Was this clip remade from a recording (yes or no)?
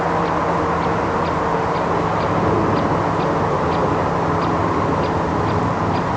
no